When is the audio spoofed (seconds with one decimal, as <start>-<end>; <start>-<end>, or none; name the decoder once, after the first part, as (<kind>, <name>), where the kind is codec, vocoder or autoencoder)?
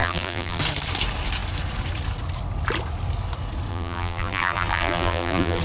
0.0-0.6 (vocoder, BigVGAN v2); 3.7-5.6